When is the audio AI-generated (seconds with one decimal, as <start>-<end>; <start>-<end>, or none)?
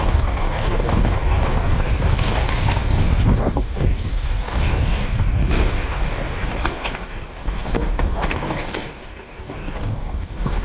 0.0-10.6